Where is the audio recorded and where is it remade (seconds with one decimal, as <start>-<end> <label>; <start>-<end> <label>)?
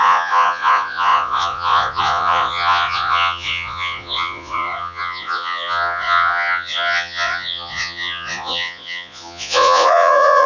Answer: 0.0-10.5 remade